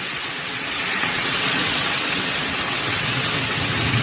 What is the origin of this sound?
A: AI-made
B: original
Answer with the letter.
A